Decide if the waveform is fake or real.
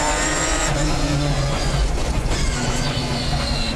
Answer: fake